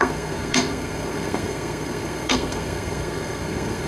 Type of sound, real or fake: fake